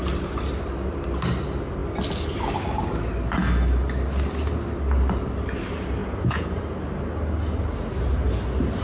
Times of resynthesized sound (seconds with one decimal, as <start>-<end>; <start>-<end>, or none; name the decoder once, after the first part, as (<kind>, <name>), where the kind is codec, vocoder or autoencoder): 6.0-6.6 (vocoder, Vocos)

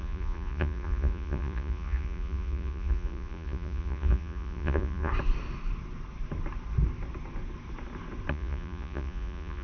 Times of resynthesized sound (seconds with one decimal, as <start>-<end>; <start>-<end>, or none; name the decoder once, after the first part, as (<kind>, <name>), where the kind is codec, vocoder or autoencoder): 0.0-5.1 (vocoder, Vocos); 8.3-9.6

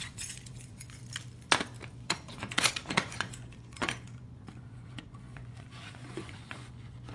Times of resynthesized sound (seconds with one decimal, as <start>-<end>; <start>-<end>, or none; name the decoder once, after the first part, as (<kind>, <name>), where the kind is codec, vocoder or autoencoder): 0.0-1.0 (vocoder, Vocos); 1.9-7.1

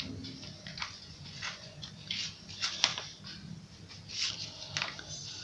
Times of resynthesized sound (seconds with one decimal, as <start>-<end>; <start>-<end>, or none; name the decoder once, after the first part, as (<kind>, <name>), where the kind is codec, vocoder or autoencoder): 0.7-1.9 (vocoder, Vocos)

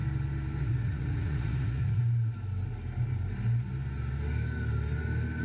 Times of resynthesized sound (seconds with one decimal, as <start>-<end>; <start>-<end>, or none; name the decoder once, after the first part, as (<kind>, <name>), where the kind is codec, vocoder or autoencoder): 0.6-2.0 (vocoder, Vocos)

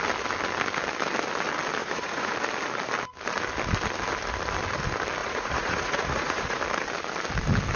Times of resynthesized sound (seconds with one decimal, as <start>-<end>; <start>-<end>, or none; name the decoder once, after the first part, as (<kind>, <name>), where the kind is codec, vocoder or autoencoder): 1.8-2.3 (vocoder, Vocos); 5.2-6.6

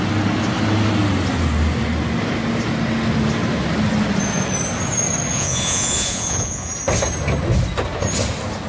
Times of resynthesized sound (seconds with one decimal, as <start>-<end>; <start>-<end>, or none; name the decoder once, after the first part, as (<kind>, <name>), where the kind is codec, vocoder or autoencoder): 5.3-6.7 (vocoder, Vocos)